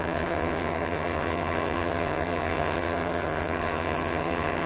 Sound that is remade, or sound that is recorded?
remade